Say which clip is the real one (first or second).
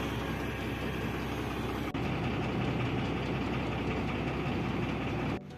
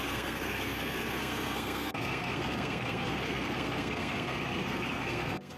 first